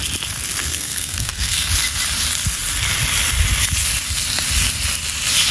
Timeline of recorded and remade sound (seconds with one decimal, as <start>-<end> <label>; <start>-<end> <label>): 0.0-0.6 recorded; 0.6-1.7 remade; 1.7-5.5 recorded